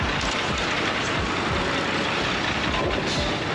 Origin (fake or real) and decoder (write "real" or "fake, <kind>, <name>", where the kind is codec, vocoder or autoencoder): fake, vocoder, BigVGAN v2